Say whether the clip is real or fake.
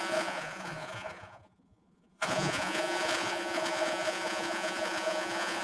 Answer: fake